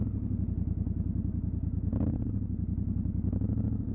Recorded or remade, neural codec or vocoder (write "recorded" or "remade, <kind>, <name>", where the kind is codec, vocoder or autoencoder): recorded